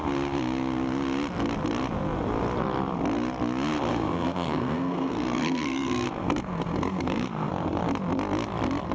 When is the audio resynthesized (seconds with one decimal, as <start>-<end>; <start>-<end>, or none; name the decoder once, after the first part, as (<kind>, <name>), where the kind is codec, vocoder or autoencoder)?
3.9-7.5 (codec, SNAC)